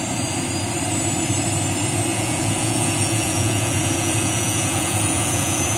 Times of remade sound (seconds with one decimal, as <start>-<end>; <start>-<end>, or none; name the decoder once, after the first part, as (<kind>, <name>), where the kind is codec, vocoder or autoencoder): 2.1-5.8 (vocoder, Vocos)